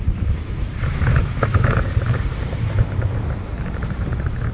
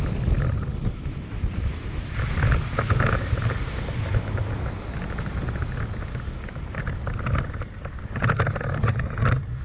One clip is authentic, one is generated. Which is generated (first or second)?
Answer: first